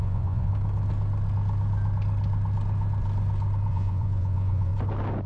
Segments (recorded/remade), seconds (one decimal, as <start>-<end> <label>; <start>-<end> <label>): 0.0-0.5 remade; 0.5-3.7 recorded; 3.7-4.7 remade; 4.7-5.3 recorded